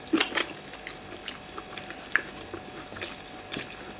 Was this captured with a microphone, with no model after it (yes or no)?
yes